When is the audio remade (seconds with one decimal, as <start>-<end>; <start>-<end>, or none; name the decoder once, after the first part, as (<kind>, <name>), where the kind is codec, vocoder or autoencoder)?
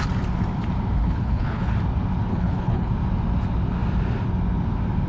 1.0-1.7 (codec, HILCodec); 2.3-2.9